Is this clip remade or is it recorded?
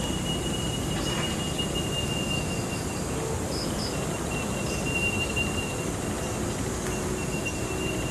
recorded